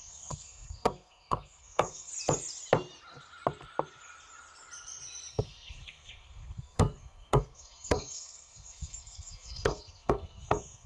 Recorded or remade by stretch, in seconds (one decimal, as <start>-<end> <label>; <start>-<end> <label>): 0.0-2.1 remade; 2.1-5.3 recorded; 5.3-10.9 remade

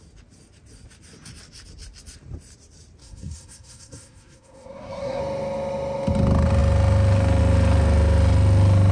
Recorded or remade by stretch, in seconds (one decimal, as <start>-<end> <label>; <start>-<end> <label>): 0.0-3.0 recorded; 3.0-5.2 remade; 5.2-8.9 recorded

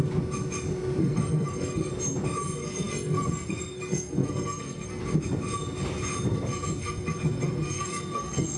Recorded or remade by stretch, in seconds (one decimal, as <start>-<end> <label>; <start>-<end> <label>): 0.0-1.0 recorded; 1.0-1.9 remade; 1.9-2.6 recorded; 2.6-5.0 remade; 5.0-6.8 recorded; 6.8-8.6 remade

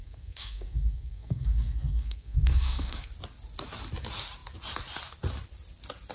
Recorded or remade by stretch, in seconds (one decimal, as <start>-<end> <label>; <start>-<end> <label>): 0.0-3.1 remade; 3.1-6.1 recorded

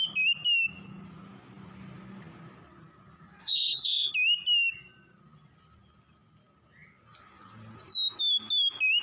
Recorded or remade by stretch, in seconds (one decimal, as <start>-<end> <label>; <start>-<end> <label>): 0.0-3.4 recorded; 3.4-4.1 remade; 4.1-9.0 recorded